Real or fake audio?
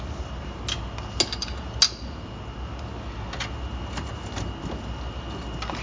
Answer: real